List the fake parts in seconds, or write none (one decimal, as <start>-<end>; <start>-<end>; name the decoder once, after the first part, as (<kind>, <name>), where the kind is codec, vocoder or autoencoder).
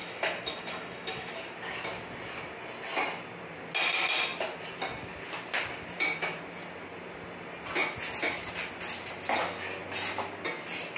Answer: 0.0-1.3 (autoencoder, DAC-VAE)